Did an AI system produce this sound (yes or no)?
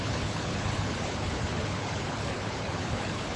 yes